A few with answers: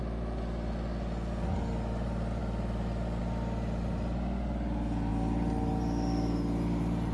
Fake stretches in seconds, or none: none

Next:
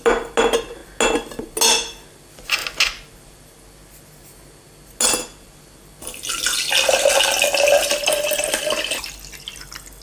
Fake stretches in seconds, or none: none

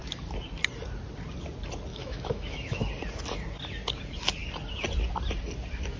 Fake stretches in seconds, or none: 1.9-2.9 (autoencoder, DAC-VAE)

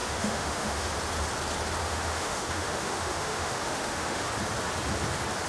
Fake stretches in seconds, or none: 0.0-0.9 (autoencoder, DAC-VAE); 1.8-4.3